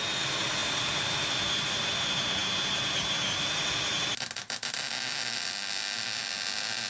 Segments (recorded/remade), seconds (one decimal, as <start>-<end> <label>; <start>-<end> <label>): 0.0-0.6 recorded; 0.6-1.9 remade; 1.9-6.9 recorded